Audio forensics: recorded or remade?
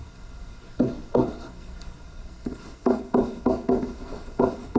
remade